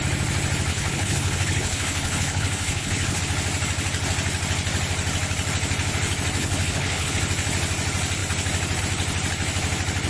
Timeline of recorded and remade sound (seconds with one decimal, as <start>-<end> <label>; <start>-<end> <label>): 0.0-0.7 recorded; 0.7-3.2 remade; 3.2-6.4 recorded; 6.4-7.1 remade; 7.1-10.1 recorded